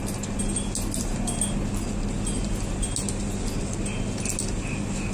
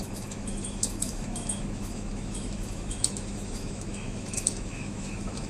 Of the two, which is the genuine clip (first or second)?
first